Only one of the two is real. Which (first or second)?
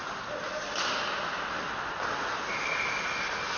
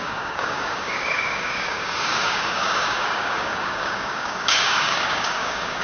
first